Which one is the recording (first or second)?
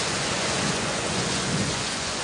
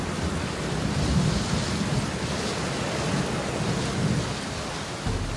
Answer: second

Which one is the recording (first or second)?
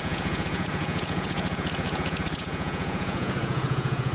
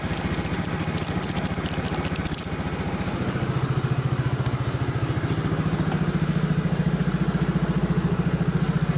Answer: second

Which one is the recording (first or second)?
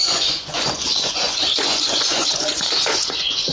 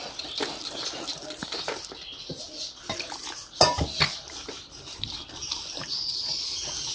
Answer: second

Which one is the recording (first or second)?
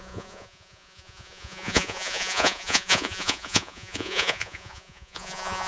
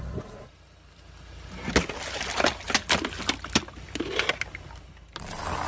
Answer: second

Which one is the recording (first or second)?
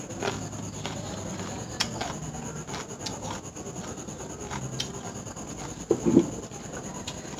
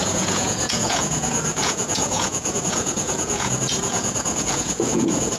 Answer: first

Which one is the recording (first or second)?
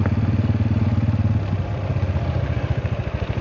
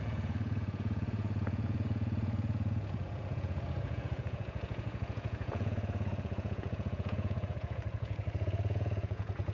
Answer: first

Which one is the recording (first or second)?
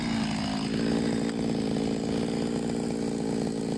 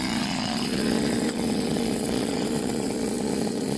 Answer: first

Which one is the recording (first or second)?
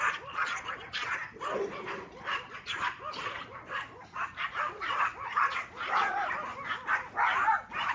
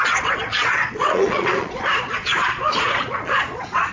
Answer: first